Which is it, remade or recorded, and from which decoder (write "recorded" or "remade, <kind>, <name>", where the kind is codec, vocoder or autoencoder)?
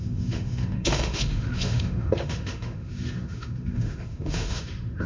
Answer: remade, autoencoder, DAC-VAE